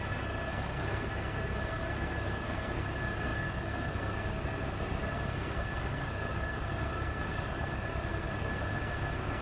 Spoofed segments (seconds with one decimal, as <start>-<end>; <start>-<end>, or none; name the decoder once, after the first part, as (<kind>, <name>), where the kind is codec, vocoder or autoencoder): 0.0-9.4 (codec, SNAC)